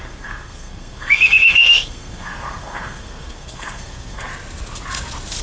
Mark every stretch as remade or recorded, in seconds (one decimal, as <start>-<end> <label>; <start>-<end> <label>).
0.0-4.3 remade; 4.3-5.4 recorded